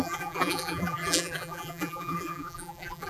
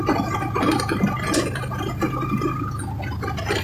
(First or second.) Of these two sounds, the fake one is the first